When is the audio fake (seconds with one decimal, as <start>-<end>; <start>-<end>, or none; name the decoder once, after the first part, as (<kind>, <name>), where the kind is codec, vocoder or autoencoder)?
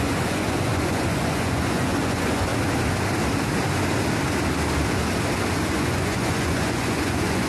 0.0-2.5 (vocoder, Vocos); 5.7-7.5